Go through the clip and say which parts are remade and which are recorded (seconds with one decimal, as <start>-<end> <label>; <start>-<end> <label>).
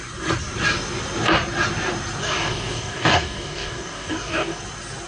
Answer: 0.0-2.2 recorded; 2.2-4.6 remade; 4.6-5.1 recorded